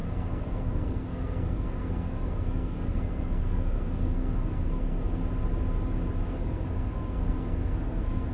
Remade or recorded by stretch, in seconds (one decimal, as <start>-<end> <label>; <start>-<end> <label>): 0.0-5.2 remade; 5.2-6.2 recorded; 6.2-8.3 remade